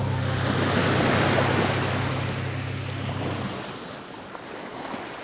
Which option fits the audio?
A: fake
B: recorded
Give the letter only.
B